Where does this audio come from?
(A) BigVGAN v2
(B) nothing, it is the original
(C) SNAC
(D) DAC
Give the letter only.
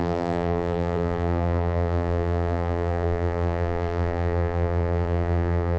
A